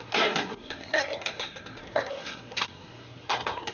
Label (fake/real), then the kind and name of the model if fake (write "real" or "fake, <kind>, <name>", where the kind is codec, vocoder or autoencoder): fake, codec, SNAC